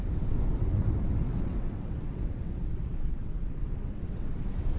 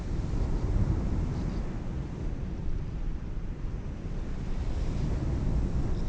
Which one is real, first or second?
second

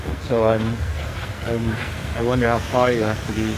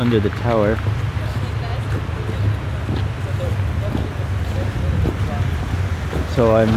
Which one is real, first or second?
second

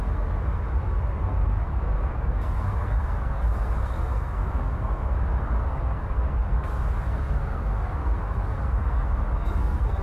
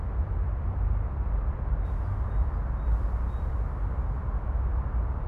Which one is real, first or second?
second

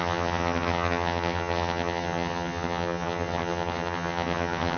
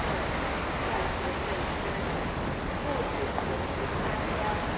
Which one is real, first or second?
second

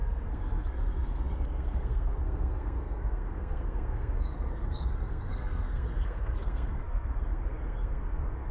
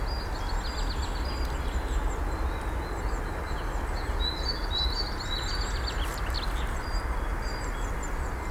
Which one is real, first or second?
second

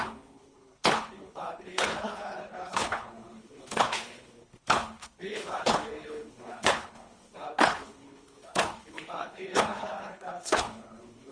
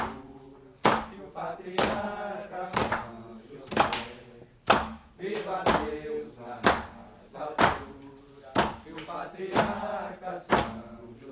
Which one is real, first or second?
second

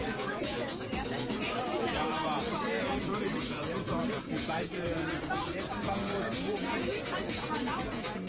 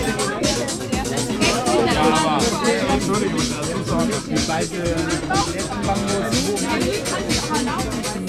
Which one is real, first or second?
second